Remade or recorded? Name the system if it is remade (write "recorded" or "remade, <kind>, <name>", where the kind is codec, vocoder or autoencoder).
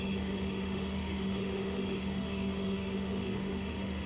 remade, autoencoder, DAC-VAE